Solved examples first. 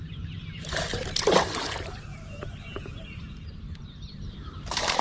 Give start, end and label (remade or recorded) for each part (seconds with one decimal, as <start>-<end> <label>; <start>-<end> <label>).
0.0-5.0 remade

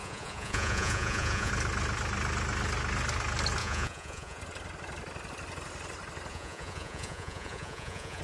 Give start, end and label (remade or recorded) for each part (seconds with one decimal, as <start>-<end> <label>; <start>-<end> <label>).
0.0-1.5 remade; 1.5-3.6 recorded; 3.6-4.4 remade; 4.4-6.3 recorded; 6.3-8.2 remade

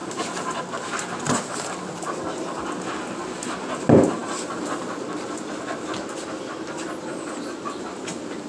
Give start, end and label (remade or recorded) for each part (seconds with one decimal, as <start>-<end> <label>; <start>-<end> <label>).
0.0-8.5 recorded

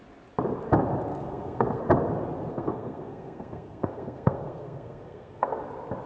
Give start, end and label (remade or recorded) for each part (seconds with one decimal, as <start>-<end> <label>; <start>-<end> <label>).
0.0-1.1 recorded; 1.1-1.8 remade; 1.8-2.5 recorded; 2.5-5.6 remade; 5.6-6.1 recorded